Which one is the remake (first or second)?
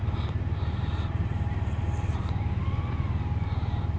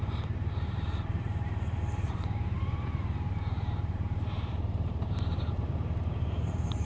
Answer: second